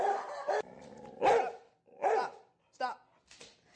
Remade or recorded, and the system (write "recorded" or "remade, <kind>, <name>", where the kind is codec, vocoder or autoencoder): recorded